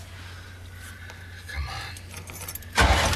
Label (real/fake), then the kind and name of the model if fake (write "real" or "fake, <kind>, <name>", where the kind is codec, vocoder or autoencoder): real